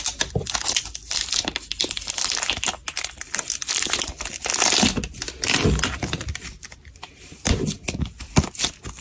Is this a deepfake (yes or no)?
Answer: no